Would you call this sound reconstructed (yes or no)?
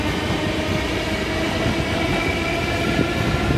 no